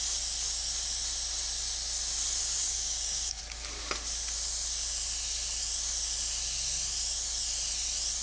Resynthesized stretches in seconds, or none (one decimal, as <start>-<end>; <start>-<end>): 2.4-3.4